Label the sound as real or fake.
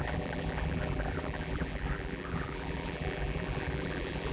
fake